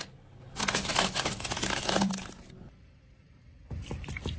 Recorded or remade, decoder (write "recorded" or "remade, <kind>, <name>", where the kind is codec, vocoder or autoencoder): recorded